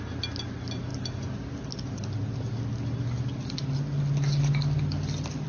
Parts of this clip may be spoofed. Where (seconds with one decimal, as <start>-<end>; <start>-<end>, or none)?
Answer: none